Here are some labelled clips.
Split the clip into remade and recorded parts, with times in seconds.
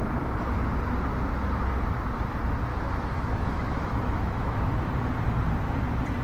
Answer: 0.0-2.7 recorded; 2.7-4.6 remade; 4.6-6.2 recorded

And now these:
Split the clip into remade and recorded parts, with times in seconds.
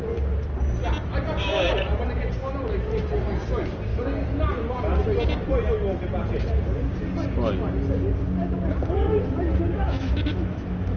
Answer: 0.0-9.7 recorded; 9.7-11.0 remade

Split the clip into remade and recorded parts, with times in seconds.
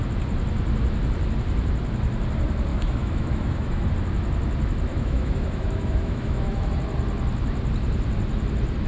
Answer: 0.0-2.7 recorded; 2.7-3.9 remade; 3.9-4.9 recorded; 4.9-6.7 remade; 6.7-8.9 recorded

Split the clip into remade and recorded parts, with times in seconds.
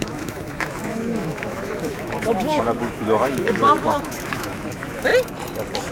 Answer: 0.0-5.1 remade; 5.1-5.9 recorded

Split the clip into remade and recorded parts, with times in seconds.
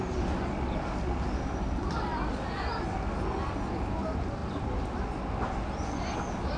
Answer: 0.0-6.6 recorded